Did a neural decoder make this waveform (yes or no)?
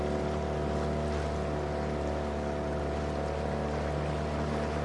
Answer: no